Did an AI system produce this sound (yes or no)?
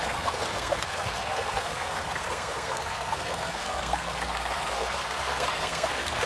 yes